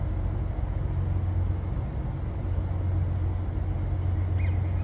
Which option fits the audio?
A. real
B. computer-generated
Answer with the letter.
A